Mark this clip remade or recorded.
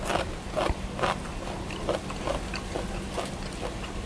recorded